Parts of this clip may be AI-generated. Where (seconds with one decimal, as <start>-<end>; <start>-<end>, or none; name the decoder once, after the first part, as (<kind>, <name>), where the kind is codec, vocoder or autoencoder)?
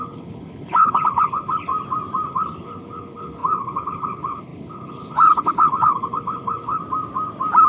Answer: 0.0-1.7 (codec, HILCodec); 2.3-6.8